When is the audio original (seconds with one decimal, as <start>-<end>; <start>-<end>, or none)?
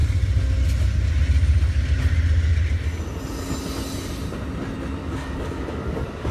0.0-5.0